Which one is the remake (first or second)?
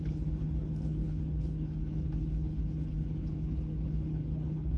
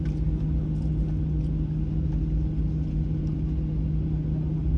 first